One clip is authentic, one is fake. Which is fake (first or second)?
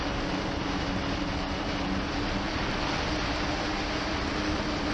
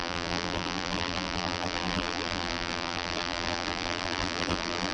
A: second